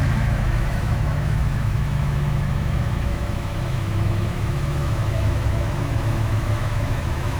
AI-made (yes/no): yes